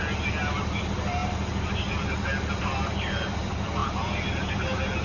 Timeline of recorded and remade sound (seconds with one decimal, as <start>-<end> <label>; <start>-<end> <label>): 0.0-5.0 recorded